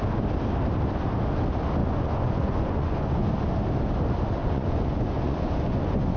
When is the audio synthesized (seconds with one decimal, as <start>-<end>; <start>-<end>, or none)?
1.8-3.3; 4.4-6.2